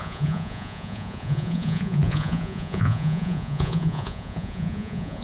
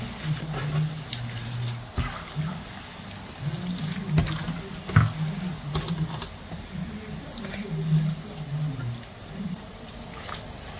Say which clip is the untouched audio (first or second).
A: second